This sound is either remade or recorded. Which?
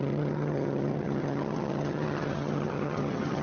remade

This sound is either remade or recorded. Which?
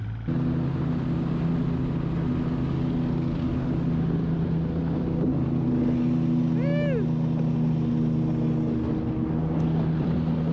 recorded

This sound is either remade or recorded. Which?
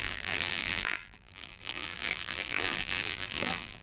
remade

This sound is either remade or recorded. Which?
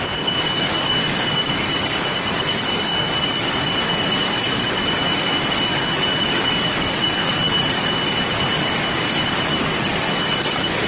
remade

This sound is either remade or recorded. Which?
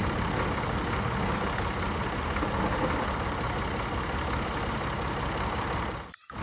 recorded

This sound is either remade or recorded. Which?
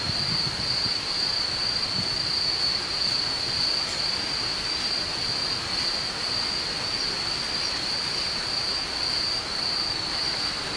recorded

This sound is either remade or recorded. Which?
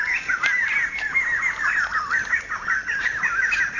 recorded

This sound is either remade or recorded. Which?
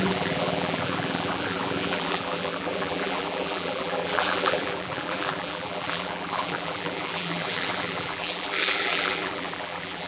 remade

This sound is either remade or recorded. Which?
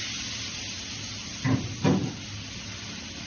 recorded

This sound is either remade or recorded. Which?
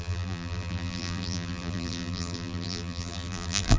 remade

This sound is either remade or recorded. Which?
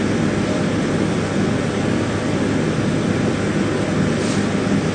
recorded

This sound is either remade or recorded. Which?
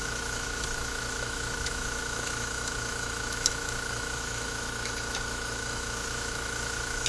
remade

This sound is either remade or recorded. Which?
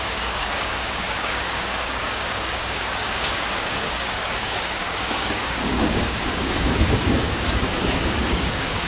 remade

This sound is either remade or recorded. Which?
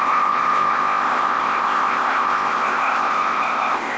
remade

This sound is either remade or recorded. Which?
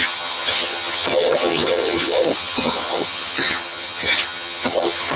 remade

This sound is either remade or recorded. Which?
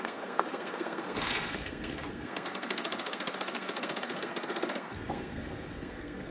remade